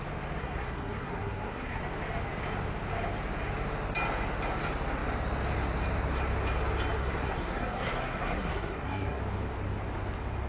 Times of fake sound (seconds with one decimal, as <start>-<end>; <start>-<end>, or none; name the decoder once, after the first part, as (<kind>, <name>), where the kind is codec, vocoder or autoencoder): 0.4-1.8 (codec, SNAC); 7.0-9.2